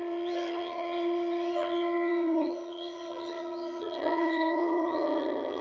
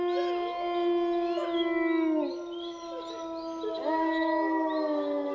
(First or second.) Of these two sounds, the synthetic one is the first